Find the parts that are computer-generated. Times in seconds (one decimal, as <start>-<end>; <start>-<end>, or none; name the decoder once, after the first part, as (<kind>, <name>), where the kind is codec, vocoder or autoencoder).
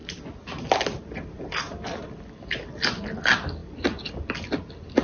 none